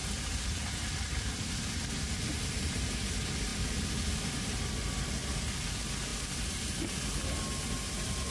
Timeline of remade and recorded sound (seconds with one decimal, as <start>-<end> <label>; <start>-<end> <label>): 0.0-3.5 recorded; 3.5-4.2 remade; 4.2-8.3 recorded